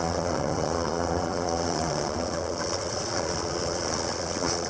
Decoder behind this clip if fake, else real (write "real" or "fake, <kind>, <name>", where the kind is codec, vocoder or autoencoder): fake, vocoder, Vocos